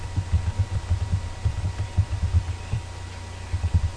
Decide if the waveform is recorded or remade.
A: recorded